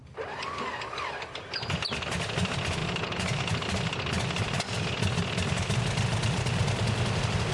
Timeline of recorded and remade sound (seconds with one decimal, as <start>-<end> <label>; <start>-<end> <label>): 0.0-7.5 recorded

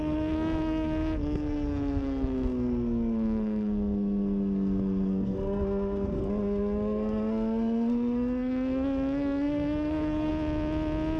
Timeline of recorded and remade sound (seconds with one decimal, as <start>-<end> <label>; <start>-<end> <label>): 0.0-10.3 remade; 10.3-11.2 recorded

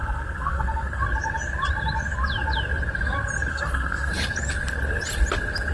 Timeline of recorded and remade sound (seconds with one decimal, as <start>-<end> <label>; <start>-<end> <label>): 0.0-1.0 remade; 1.0-3.5 recorded; 3.5-4.1 remade; 4.1-5.7 recorded

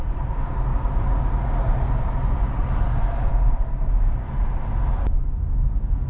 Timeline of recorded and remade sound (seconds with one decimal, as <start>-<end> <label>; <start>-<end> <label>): 0.0-6.1 recorded

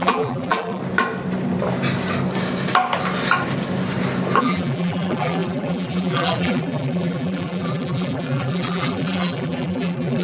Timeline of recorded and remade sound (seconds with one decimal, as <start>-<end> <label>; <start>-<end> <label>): 0.0-0.8 remade; 0.8-4.4 recorded; 4.4-10.2 remade